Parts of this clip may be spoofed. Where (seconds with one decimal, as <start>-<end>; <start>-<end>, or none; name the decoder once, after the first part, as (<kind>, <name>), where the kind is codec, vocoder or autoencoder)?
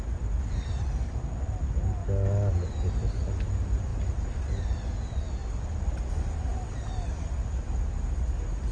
none